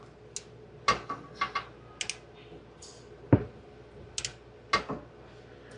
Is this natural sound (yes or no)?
yes